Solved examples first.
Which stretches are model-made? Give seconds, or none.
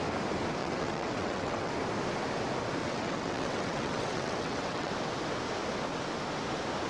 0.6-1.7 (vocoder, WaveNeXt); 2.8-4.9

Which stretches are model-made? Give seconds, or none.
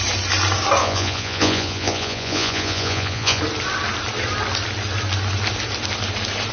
0.8-3.4 (vocoder, Vocos)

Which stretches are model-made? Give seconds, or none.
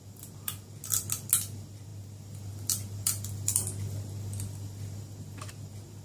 1.9-5.5 (vocoder, BigVGAN v2)